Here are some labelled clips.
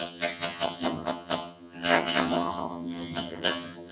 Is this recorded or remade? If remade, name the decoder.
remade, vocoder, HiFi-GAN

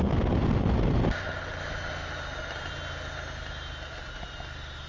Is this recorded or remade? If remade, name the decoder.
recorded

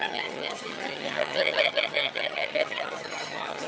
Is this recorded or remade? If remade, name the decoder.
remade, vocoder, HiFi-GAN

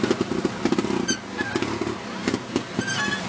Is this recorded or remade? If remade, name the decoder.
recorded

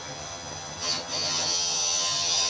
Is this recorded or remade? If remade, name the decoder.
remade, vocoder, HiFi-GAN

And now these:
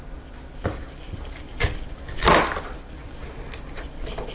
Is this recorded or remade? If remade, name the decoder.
recorded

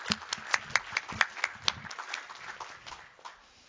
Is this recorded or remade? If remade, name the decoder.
recorded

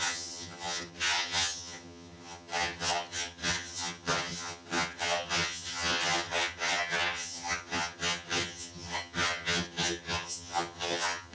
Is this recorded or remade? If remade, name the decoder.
remade, vocoder, HiFi-GAN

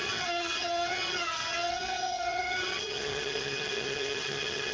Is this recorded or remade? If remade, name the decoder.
remade, vocoder, HiFi-GAN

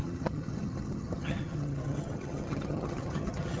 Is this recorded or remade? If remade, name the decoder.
remade, vocoder, HiFi-GAN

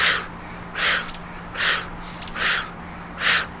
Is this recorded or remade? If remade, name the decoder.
recorded